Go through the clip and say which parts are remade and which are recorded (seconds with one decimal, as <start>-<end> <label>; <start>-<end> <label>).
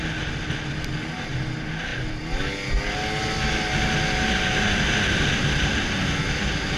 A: 0.0-6.8 recorded